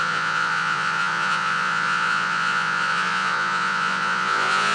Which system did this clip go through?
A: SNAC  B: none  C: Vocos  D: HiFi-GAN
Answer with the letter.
C